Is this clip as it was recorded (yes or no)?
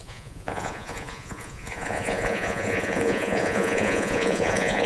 no